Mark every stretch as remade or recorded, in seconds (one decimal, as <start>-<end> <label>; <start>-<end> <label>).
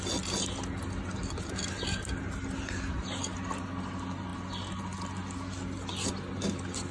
0.0-6.9 recorded